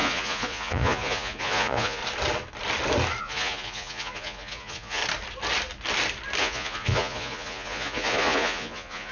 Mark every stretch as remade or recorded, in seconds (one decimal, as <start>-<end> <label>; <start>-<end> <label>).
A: 0.0-2.0 remade; 2.0-3.2 recorded; 3.2-5.0 remade; 5.0-6.4 recorded; 6.4-9.1 remade